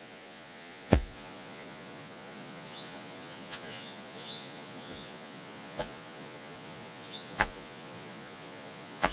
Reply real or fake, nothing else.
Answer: fake